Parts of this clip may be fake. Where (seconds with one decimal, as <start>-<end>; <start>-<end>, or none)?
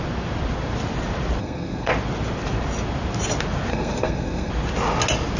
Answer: 1.4-1.9; 3.7-4.5